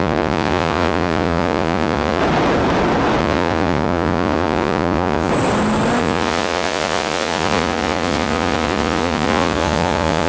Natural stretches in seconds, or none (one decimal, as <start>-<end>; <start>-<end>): 2.2-3.2; 5.3-6.0